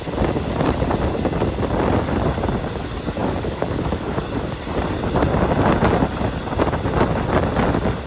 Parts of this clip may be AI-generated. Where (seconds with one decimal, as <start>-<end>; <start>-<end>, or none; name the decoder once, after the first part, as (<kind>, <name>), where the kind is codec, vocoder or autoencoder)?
3.2-4.5 (codec, DAC)